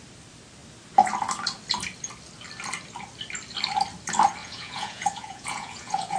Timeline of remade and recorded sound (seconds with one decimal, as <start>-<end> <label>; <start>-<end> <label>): 0.0-4.4 recorded; 4.4-6.2 remade